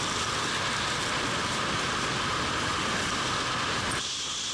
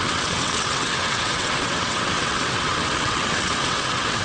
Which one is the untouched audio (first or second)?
first